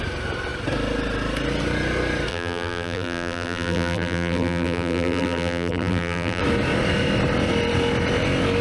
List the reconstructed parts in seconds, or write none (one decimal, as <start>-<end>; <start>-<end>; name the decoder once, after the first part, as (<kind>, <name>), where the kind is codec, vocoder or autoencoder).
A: 2.3-6.4 (vocoder, BigVGAN v2)